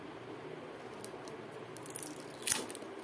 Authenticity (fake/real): real